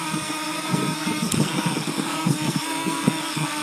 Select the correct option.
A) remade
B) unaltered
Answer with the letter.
A